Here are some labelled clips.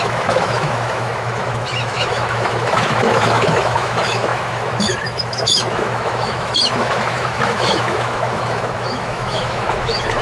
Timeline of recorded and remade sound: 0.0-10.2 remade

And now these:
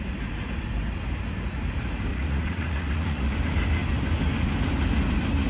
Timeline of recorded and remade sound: 0.0-2.1 recorded; 2.1-3.3 remade; 3.3-5.5 recorded